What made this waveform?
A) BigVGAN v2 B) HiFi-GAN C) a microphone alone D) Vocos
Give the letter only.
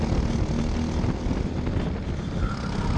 C